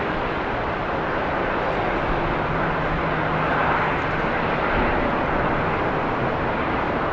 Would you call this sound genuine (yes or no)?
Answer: yes